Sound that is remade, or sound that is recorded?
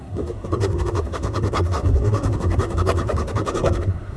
remade